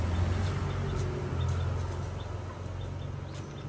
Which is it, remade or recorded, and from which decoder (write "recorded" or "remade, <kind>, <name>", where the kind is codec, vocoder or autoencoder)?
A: recorded